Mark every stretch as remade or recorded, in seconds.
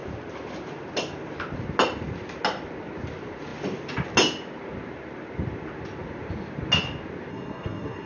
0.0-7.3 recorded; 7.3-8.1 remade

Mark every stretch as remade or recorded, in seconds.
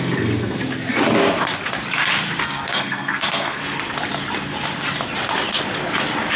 0.0-0.6 remade; 0.6-2.4 recorded; 2.4-3.6 remade; 3.6-6.4 recorded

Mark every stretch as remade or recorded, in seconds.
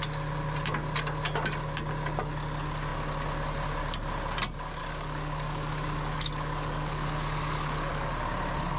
0.0-4.8 recorded; 4.8-8.1 remade; 8.1-8.8 recorded